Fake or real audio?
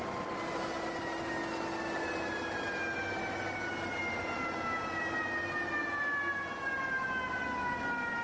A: real